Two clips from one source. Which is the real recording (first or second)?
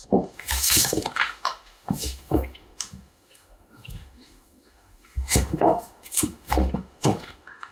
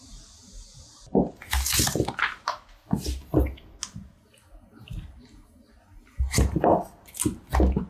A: second